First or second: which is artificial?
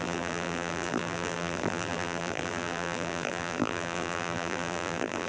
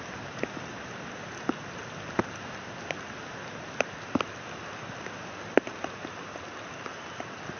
first